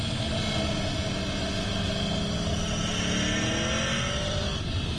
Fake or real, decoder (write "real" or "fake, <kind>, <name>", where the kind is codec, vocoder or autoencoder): real